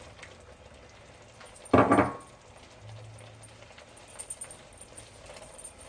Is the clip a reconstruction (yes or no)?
no